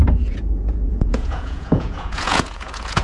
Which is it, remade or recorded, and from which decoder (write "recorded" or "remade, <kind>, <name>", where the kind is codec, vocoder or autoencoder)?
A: remade, vocoder, Vocos